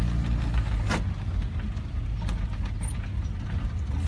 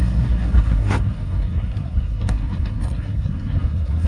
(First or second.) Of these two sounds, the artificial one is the second